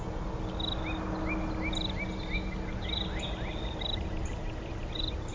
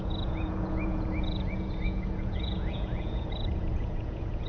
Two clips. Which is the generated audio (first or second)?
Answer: second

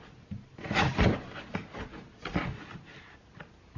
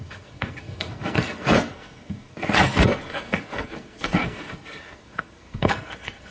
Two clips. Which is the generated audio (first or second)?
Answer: second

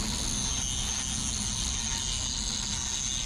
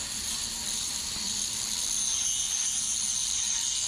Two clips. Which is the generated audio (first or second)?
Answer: second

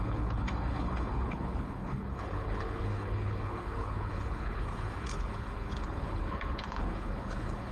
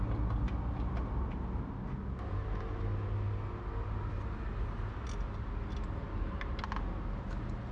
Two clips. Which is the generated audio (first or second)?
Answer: first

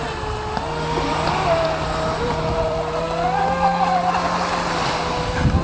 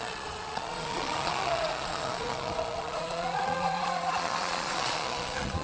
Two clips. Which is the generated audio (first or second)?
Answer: second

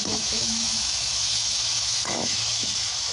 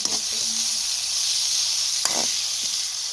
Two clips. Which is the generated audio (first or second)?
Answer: first